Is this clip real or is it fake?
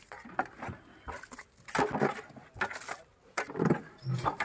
real